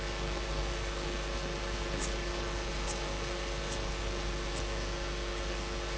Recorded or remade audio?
remade